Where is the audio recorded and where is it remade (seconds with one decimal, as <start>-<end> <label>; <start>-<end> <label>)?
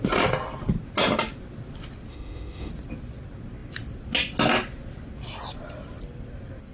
0.0-2.1 recorded; 2.1-2.7 remade; 2.7-6.7 recorded